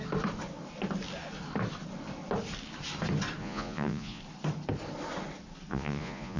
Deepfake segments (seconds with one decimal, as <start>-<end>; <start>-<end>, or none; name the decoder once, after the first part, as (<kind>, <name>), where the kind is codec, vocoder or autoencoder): 3.4-4.2 (vocoder, Vocos); 5.7-6.4